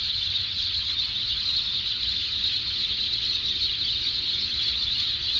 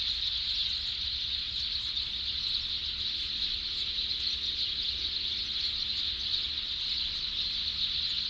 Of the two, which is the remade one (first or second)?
first